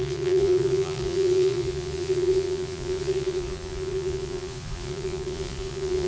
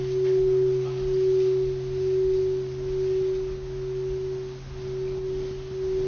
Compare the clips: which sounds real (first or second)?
second